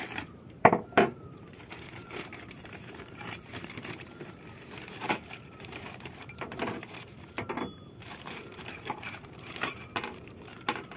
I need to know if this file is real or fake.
fake